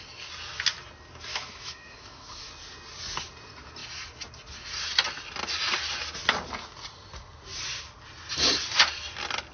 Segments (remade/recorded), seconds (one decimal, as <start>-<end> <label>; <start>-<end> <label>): 0.0-1.3 recorded; 1.3-2.5 remade; 2.5-9.5 recorded